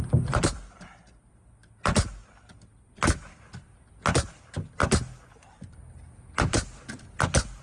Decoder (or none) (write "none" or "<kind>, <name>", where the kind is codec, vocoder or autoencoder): none